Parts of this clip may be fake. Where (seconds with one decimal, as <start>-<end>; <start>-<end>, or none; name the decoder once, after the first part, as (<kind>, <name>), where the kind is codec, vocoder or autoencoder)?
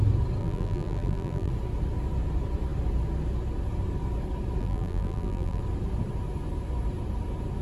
0.4-1.5 (vocoder, BigVGAN v2); 4.6-5.6